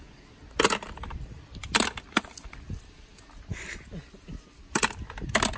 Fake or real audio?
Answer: real